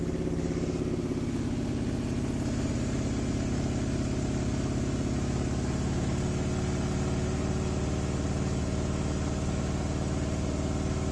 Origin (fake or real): real